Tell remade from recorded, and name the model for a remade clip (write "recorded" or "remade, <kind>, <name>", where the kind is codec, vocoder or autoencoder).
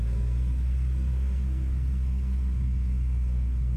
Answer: remade, codec, SNAC